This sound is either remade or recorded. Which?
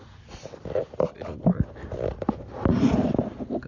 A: recorded